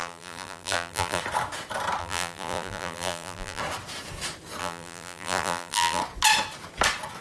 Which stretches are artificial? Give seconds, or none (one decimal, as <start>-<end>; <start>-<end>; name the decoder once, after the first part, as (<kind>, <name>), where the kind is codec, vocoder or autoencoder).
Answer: 0.0-1.2 (vocoder, BigVGAN v2); 2.0-3.6; 4.6-6.0